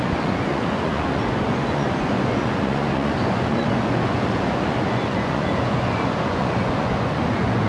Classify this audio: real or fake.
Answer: fake